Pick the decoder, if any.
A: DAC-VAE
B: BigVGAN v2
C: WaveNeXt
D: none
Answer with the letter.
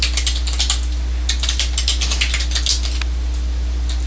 D